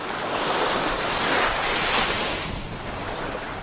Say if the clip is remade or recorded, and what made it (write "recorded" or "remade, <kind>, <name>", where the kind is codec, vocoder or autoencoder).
recorded